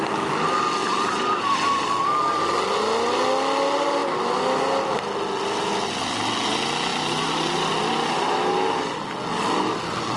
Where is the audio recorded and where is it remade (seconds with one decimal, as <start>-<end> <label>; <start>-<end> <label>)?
0.0-0.8 recorded; 0.8-1.9 remade; 1.9-10.2 recorded